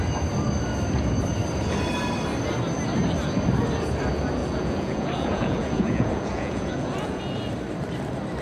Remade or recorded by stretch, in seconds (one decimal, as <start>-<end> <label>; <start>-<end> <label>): 0.0-4.4 recorded; 4.4-7.5 remade; 7.5-8.4 recorded